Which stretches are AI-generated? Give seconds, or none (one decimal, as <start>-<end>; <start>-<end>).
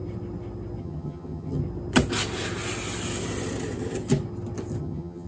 0.8-1.6; 4.8-5.3